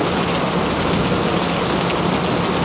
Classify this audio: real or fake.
real